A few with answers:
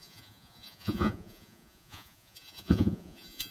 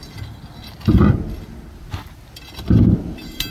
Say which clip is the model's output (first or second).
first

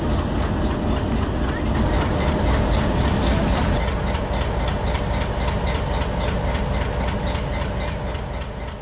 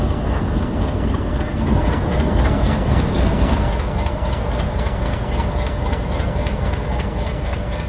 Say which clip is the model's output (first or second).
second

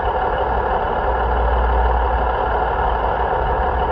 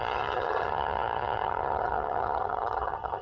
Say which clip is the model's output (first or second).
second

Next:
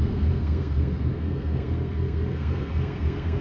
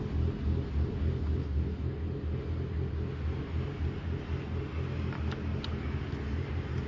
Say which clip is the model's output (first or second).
first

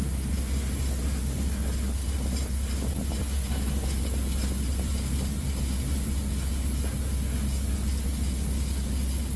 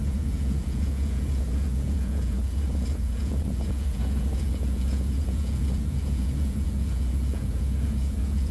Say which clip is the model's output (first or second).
second